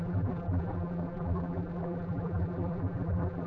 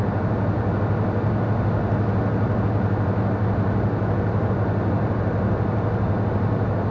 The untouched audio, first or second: second